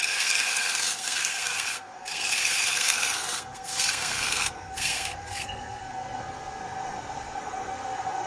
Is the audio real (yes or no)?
no